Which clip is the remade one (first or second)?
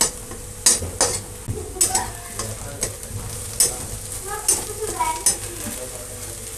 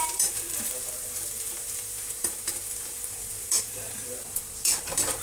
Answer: second